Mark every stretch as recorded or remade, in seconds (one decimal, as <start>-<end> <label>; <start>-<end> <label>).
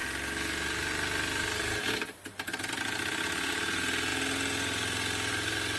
0.0-5.8 recorded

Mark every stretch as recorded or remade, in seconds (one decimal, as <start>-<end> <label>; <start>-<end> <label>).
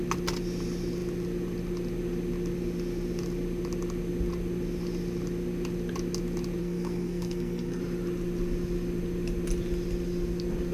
0.0-6.6 recorded; 6.6-7.8 remade; 7.8-10.7 recorded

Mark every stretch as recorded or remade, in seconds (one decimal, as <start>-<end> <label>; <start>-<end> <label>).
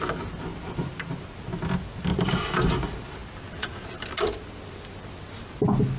0.0-6.0 recorded